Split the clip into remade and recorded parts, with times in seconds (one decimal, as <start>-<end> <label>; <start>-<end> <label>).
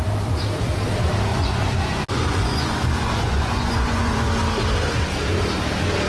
0.0-1.3 recorded; 1.3-4.3 remade; 4.3-6.1 recorded